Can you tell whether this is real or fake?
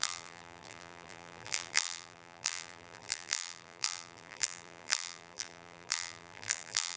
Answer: fake